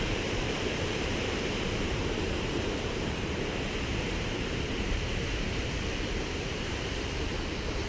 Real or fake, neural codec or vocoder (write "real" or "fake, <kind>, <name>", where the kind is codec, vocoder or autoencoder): fake, vocoder, BigVGAN v2